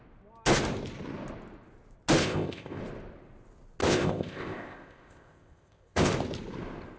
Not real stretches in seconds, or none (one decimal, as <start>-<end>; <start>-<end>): 2.2-2.8; 3.8-6.1